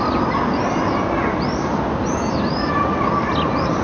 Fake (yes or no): no